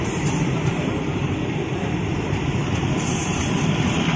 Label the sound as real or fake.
fake